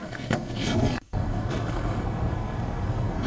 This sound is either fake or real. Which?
fake